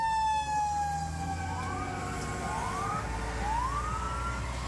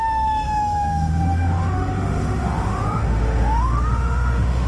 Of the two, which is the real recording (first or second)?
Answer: first